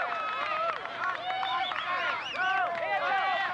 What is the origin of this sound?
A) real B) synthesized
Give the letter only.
A